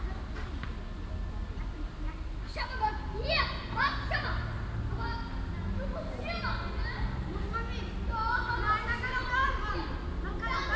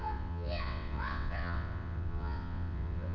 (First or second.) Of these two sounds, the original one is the first